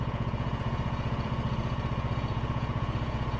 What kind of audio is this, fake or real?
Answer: fake